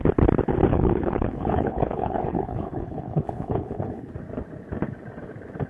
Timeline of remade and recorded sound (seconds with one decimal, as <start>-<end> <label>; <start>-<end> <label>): 0.0-0.7 recorded; 0.7-4.1 remade; 4.1-5.7 recorded